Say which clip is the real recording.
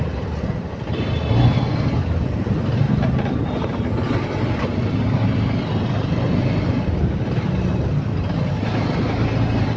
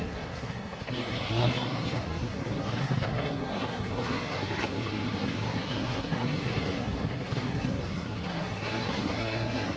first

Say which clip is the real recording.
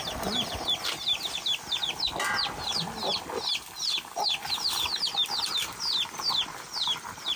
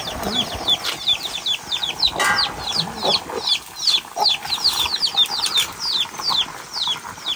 second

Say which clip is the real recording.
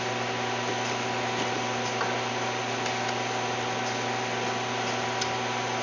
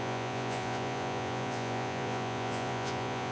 first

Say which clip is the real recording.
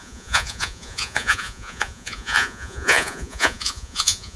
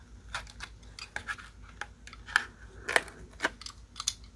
second